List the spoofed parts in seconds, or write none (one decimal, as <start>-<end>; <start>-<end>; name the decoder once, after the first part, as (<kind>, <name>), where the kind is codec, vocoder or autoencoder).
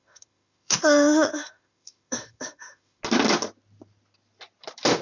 0.0-3.0 (autoencoder, DAC-VAE)